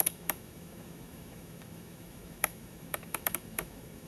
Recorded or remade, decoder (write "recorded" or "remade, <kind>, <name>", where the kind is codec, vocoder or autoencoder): remade, autoencoder, DAC-VAE